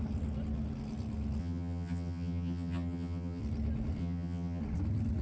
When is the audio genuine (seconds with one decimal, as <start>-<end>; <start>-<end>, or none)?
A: 0.0-1.4; 3.4-4.0; 4.6-5.2